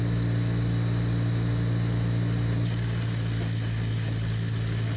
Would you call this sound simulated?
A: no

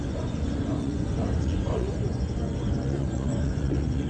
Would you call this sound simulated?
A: yes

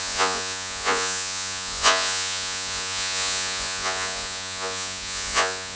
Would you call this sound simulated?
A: yes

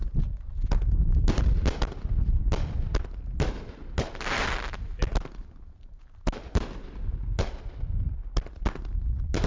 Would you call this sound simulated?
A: no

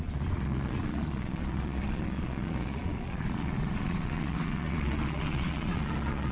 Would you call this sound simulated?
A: yes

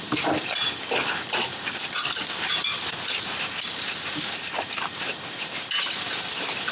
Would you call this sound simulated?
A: no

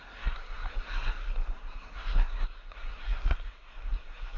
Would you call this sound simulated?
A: yes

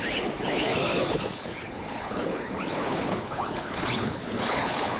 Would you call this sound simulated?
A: yes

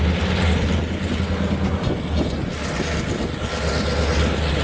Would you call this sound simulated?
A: no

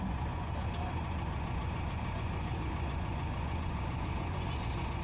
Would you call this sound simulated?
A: yes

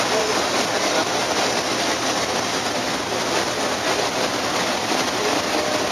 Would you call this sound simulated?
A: no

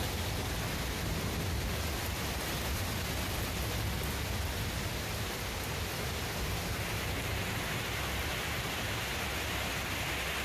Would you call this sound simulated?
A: no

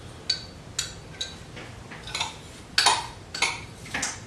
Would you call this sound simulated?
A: no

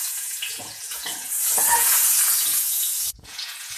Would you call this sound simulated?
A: yes